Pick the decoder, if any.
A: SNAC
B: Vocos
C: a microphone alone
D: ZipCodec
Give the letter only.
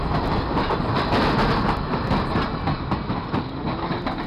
C